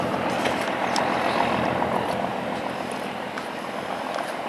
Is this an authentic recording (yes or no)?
yes